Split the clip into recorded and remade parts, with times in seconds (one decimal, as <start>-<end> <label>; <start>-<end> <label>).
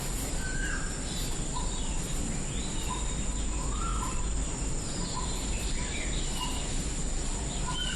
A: 0.0-8.0 recorded